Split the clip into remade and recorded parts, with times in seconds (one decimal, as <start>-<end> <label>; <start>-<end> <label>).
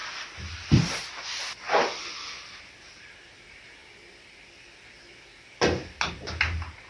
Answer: 0.0-6.9 recorded